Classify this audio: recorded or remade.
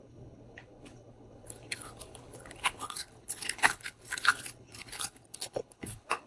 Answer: remade